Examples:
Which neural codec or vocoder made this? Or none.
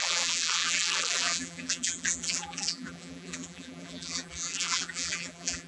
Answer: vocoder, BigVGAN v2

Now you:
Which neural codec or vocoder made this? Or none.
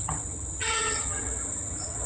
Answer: vocoder, HiFi-GAN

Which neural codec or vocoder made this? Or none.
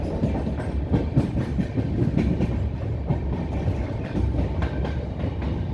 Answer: none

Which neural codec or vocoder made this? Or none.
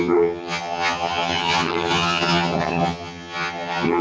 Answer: vocoder, HiFi-GAN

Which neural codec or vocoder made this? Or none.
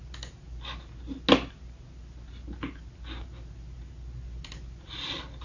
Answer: none